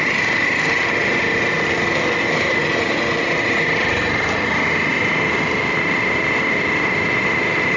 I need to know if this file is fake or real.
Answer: real